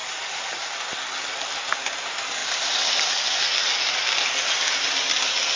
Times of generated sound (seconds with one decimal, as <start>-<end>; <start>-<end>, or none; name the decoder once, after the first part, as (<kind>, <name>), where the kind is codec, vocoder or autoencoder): none